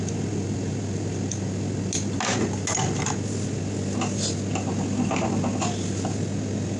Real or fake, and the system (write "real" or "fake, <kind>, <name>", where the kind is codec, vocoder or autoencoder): real